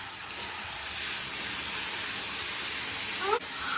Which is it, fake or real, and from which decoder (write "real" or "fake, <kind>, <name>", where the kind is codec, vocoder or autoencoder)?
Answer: real